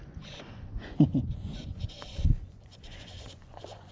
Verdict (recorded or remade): remade